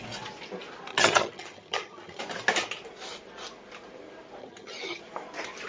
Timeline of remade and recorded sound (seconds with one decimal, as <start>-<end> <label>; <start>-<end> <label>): 0.0-0.9 recorded; 0.9-2.2 remade; 2.2-4.4 recorded; 4.4-5.0 remade; 5.0-5.7 recorded